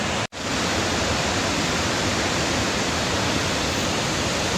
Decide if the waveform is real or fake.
fake